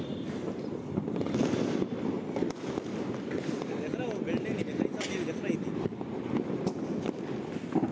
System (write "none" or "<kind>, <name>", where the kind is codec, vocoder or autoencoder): none